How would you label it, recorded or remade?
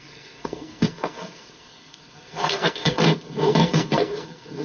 remade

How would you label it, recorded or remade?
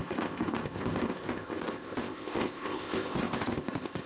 remade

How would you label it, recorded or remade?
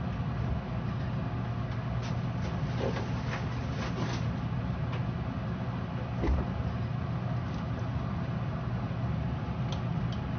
recorded